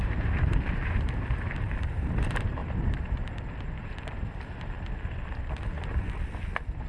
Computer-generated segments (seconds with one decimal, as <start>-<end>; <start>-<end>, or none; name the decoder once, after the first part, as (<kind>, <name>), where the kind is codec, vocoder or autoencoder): 0.0-2.6 (vocoder, BigVGAN v2)